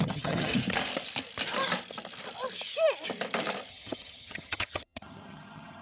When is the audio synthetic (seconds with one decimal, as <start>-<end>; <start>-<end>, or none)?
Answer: 0.0-0.5; 3.7-5.8